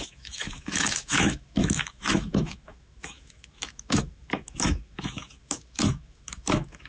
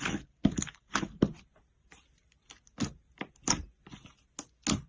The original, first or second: second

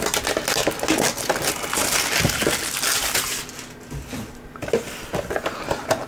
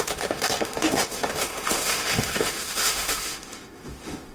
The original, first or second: first